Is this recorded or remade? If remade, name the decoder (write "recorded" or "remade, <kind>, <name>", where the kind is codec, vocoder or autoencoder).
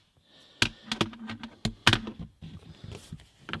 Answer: recorded